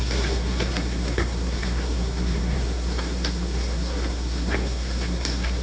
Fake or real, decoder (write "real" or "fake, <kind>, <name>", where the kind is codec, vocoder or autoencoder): fake, codec, SNAC